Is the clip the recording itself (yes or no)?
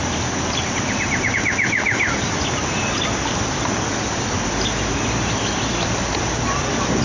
yes